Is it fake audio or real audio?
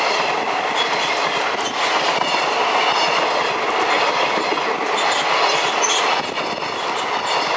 real